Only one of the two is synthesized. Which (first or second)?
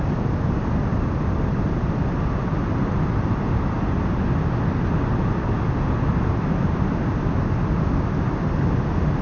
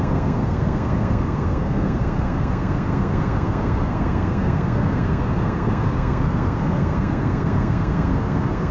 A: second